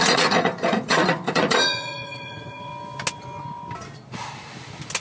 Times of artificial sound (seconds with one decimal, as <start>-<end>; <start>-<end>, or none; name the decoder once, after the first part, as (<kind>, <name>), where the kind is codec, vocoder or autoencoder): 0.0-2.7 (vocoder, Vocos)